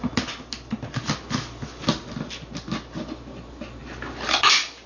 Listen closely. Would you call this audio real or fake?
real